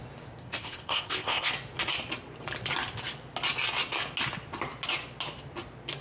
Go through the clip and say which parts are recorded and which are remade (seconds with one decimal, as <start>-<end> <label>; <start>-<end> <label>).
0.0-0.4 recorded; 0.4-1.5 remade; 1.5-6.0 recorded